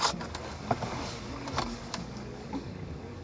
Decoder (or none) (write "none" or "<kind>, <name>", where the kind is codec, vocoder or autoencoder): codec, DAC